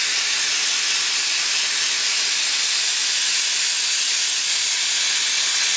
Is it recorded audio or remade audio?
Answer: recorded